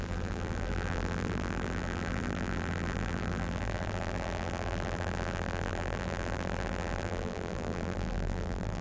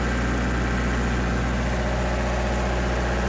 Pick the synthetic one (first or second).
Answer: first